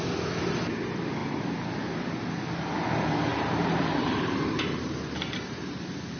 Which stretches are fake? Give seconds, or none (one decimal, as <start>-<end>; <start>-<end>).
3.3-6.2